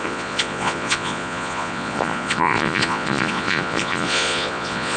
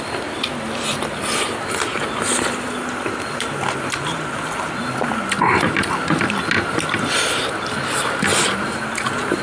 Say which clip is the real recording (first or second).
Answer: second